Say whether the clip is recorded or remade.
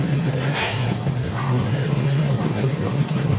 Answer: remade